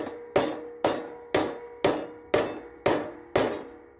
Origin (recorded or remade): recorded